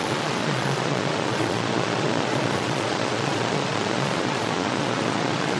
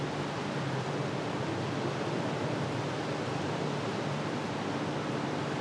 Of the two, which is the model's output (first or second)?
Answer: first